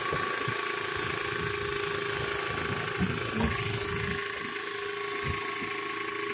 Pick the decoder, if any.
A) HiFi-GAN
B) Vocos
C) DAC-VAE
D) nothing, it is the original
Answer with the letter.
D